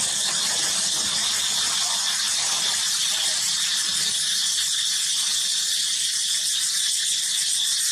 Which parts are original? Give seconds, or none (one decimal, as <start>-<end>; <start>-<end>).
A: 0.0-7.9